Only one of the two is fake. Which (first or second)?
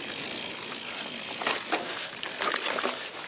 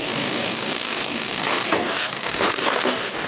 second